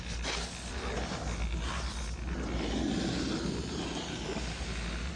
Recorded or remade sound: recorded